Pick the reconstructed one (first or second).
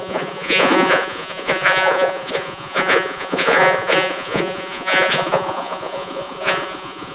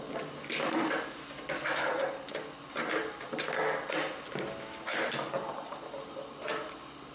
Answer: first